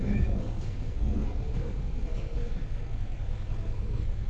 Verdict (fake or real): fake